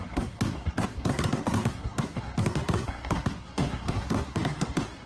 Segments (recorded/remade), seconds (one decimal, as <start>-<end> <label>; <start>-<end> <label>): 0.0-5.1 remade